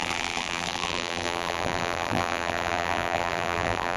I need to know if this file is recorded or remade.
remade